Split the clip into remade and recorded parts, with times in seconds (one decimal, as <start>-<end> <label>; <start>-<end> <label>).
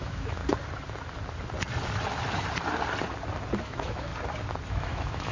0.0-0.4 remade; 0.4-3.6 recorded; 3.6-4.1 remade; 4.1-4.7 recorded; 4.7-5.3 remade